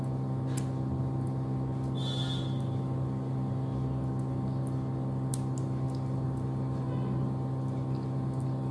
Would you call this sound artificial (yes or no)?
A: no